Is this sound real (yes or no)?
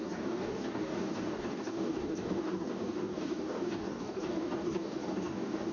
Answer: no